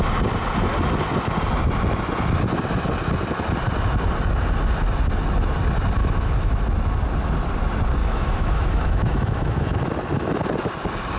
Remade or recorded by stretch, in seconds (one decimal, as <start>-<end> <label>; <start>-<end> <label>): 0.0-6.0 recorded; 6.0-6.6 remade; 6.6-8.0 recorded; 8.0-9.9 remade; 9.9-11.2 recorded